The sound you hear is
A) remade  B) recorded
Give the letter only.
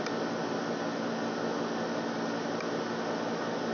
B